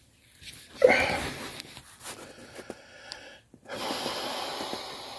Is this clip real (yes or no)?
yes